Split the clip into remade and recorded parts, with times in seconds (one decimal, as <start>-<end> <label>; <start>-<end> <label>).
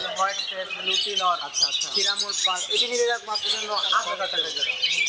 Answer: 0.0-2.4 recorded; 2.4-4.2 remade; 4.2-5.1 recorded